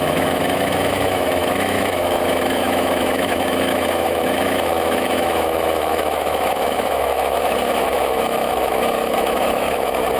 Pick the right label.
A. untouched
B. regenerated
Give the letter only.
B